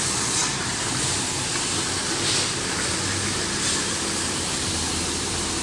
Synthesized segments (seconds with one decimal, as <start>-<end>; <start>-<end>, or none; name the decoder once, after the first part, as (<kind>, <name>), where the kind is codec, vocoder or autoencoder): none